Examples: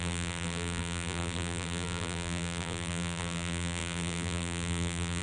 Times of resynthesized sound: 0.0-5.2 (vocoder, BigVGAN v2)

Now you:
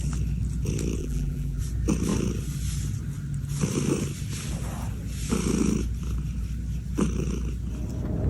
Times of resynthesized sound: 1.0-1.6 (vocoder, BigVGAN v2)

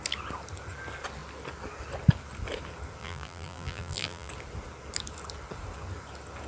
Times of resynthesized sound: 3.0-4.3 (vocoder, BigVGAN v2)

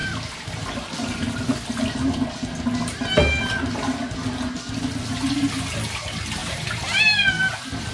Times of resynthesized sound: 6.4-7.3 (vocoder, BigVGAN v2)